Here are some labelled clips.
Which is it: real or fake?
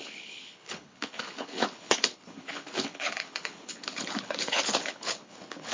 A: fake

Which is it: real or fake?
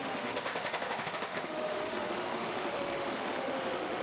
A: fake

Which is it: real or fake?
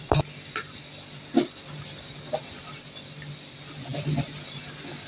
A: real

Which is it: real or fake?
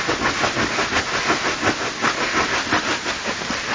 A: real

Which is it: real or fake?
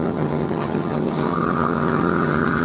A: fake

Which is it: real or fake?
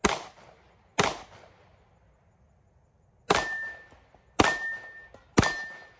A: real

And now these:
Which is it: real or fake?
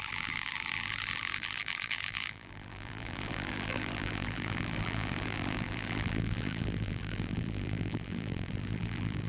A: fake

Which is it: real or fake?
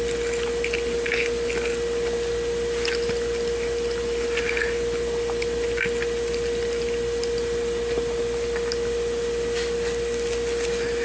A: real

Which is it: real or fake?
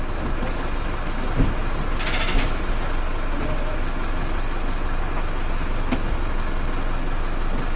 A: real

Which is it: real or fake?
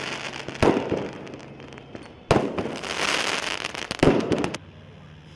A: real